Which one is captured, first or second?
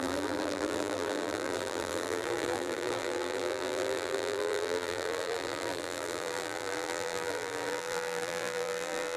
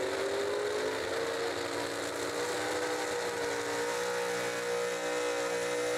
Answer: second